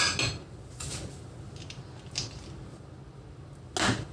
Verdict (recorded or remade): recorded